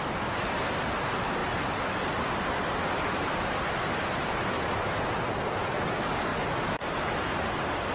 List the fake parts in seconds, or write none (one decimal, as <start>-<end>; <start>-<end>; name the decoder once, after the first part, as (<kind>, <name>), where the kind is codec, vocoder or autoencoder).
none